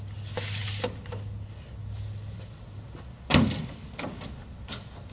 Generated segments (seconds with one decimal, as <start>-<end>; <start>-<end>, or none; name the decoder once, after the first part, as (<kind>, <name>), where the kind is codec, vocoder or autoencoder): none